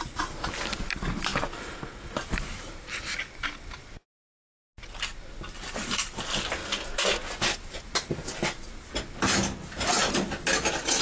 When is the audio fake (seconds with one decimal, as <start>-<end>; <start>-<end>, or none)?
none